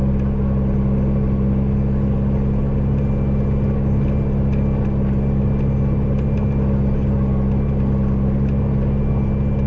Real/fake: real